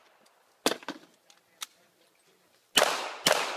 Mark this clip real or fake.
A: real